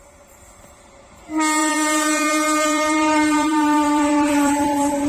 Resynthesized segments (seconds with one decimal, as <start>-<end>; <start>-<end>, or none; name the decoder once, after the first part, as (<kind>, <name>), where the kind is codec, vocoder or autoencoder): 1.6-5.1 (vocoder, BigVGAN v2)